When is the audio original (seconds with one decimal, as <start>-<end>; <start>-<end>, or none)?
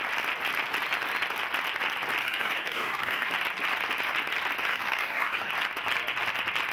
0.0-2.2; 3.3-4.7; 5.5-6.7